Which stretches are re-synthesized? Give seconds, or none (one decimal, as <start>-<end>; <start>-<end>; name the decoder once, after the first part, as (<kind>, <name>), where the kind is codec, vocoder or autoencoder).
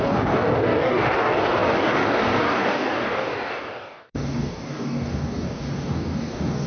0.0-6.7 (codec, DAC)